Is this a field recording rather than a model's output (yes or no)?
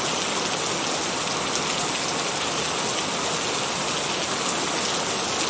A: yes